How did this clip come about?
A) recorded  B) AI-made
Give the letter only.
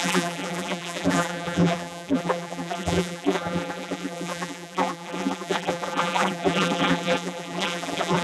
B